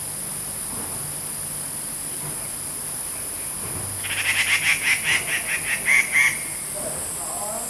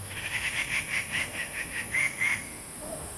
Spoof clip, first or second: second